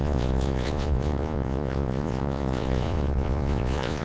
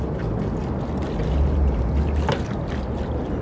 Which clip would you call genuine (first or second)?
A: second